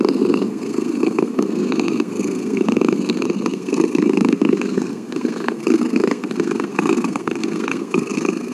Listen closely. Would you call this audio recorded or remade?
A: remade